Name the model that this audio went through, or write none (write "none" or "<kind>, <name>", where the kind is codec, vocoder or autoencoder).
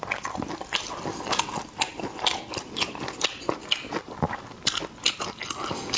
none